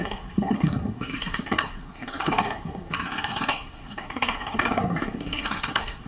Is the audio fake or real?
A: fake